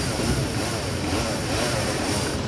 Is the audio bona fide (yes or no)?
no